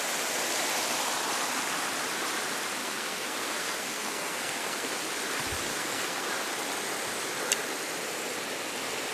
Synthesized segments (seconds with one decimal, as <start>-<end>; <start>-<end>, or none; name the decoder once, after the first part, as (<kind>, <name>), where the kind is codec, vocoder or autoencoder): 2.8-4.9 (codec, SNAC); 5.7-6.3